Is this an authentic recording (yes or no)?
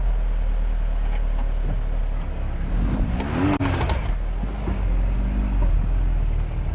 yes